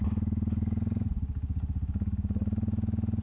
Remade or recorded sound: recorded